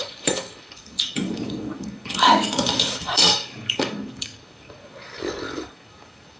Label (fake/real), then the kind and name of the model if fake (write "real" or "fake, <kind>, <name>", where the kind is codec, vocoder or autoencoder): fake, codec, DAC